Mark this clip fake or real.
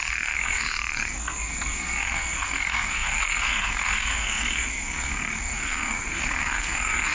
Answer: fake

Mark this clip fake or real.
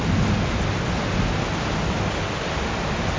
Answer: real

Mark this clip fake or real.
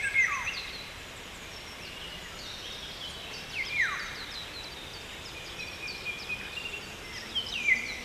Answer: fake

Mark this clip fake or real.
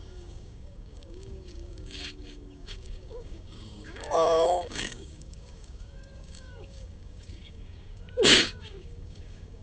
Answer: fake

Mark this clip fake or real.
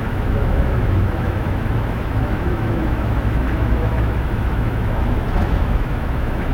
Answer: fake